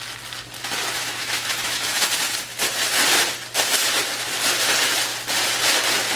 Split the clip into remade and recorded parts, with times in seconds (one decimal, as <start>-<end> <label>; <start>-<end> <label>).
0.0-1.0 recorded; 1.0-2.1 remade; 2.1-6.2 recorded